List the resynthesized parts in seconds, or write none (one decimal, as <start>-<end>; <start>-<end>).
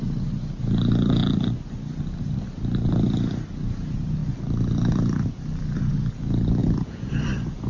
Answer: 6.6-7.1